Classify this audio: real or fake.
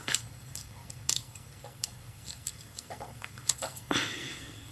fake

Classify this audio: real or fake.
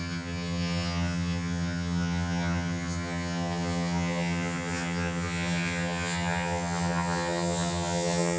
fake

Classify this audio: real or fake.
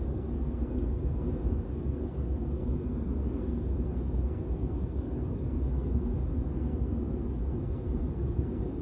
fake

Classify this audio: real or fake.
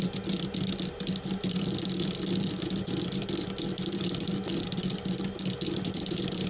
real